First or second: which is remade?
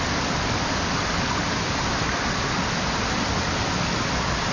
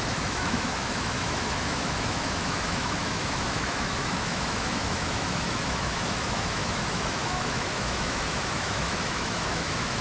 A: second